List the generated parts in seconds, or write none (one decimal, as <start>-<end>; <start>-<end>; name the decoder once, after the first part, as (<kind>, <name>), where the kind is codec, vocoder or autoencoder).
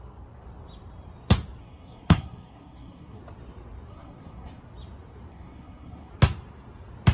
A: 1.6-3.2 (codec, SNAC); 3.9-4.6; 5.3-6.1